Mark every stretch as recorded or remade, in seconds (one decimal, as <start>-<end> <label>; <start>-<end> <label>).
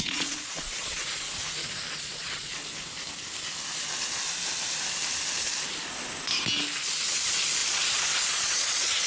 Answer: 0.0-1.4 remade; 1.4-2.0 recorded; 2.0-2.5 remade; 2.5-7.1 recorded; 7.1-9.1 remade